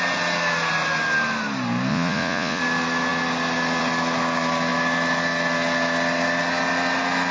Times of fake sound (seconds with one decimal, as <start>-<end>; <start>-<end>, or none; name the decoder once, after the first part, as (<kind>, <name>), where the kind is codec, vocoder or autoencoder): 1.9-2.6 (vocoder, Vocos)